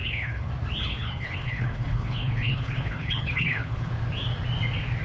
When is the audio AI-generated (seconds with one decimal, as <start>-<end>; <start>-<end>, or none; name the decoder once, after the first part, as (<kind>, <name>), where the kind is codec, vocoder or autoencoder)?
0.0-0.5 (codec, HILCodec); 0.9-3.9